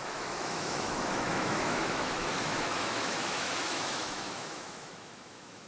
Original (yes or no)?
no